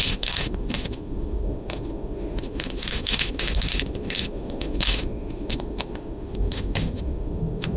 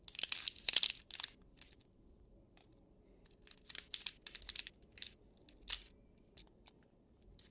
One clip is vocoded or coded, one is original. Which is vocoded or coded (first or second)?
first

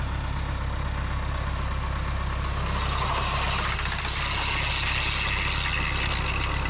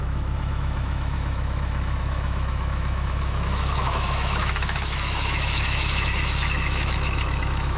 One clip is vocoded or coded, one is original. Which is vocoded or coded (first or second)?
second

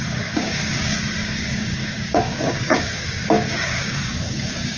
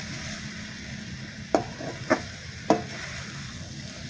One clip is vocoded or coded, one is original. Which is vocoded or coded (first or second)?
first